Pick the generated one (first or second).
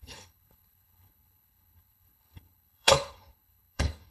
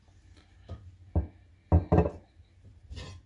first